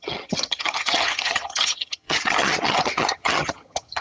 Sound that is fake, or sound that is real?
fake